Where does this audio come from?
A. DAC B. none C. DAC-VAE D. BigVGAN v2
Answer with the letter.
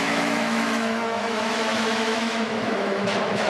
C